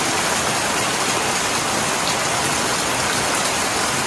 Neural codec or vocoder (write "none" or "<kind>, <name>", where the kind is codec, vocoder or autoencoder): none